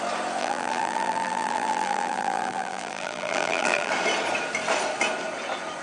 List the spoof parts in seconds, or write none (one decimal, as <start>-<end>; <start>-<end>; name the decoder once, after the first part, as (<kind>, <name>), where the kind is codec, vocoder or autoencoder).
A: 0.4-3.9 (vocoder, BigVGAN v2)